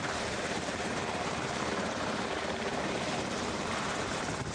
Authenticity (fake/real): fake